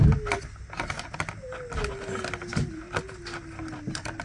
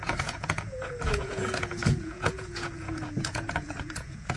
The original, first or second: first